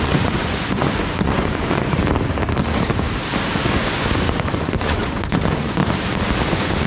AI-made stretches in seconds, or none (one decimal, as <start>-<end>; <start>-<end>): 0.0-2.0; 3.5-5.8; 6.5-6.9